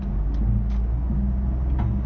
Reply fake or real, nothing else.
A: real